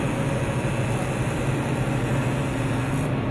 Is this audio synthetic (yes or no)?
no